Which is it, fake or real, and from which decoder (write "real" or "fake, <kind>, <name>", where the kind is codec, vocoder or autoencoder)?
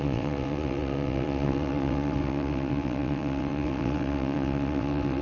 fake, vocoder, WaveNeXt